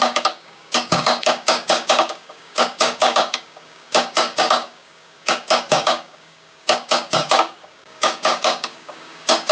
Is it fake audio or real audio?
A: fake